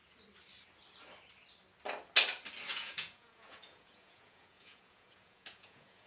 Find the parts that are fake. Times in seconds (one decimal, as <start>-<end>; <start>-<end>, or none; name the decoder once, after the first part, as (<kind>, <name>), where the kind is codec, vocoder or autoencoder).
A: 2.7-6.1 (vocoder, Vocos)